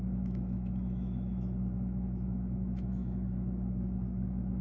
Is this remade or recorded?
remade